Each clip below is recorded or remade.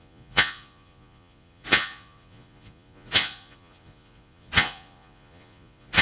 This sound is remade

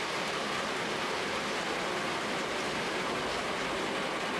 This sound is recorded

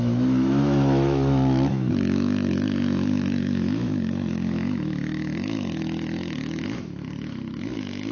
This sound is remade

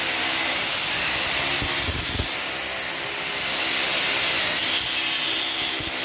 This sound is recorded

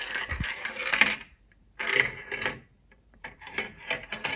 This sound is remade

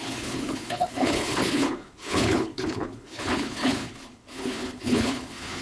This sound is remade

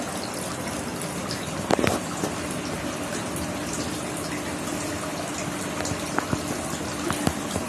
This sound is recorded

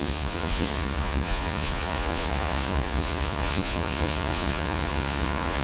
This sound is remade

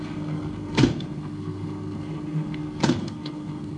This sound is remade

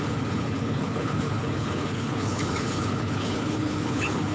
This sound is remade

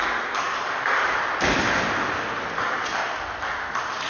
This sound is recorded